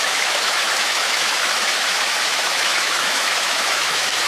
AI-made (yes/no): yes